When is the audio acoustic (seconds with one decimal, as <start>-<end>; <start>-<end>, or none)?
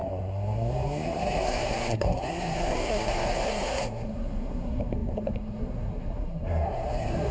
none